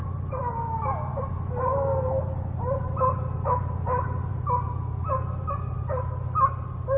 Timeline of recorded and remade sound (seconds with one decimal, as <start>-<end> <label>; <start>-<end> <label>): 0.0-7.0 recorded